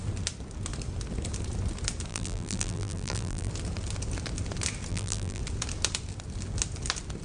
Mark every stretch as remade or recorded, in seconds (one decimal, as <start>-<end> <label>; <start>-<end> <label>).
0.0-2.1 recorded; 2.1-3.5 remade; 3.5-4.9 recorded; 4.9-5.4 remade; 5.4-7.2 recorded